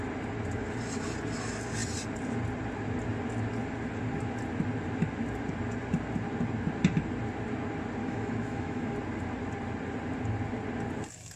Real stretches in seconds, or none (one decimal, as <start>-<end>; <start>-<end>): 0.0-8.0; 8.9-11.4